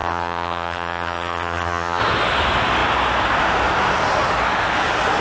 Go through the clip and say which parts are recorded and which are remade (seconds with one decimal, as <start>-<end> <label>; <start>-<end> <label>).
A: 0.0-2.0 remade; 2.0-5.2 recorded